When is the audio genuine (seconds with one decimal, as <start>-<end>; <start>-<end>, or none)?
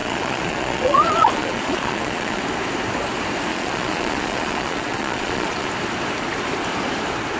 2.4-3.5; 5.7-7.4